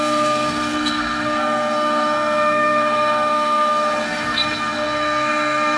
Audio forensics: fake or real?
fake